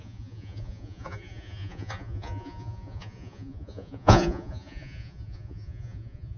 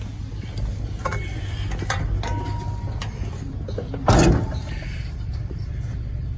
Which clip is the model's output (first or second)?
first